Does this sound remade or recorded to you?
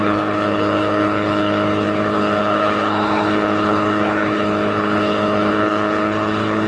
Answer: remade